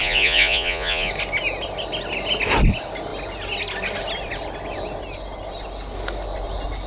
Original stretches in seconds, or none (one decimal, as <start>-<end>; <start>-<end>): 1.1-6.9